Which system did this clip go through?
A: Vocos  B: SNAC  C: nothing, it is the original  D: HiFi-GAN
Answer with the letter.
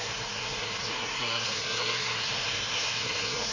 B